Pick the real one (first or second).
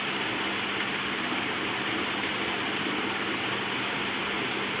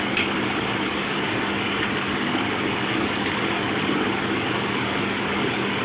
first